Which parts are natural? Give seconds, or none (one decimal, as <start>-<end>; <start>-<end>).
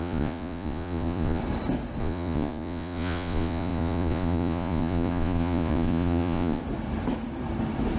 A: 1.4-2.0; 6.6-8.0